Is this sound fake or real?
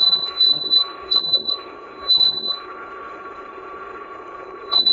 fake